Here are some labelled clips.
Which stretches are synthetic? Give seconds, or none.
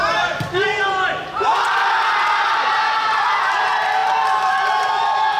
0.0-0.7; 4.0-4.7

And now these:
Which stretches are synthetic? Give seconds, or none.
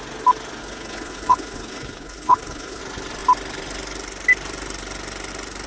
0.6-2.8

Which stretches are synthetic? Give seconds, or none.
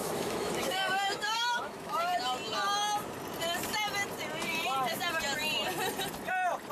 0.0-2.1